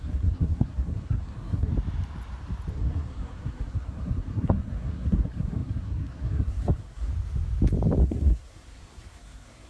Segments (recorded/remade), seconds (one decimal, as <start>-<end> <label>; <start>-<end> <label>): 0.0-1.7 remade; 1.7-2.7 recorded; 2.7-7.1 remade; 7.1-8.0 recorded; 8.0-9.7 remade